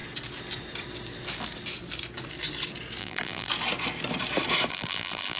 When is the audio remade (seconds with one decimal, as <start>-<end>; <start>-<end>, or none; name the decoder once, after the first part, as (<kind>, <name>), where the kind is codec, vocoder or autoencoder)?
3.0-3.5 (vocoder, BigVGAN v2); 4.7-5.4